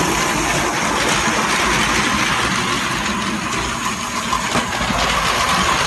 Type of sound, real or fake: real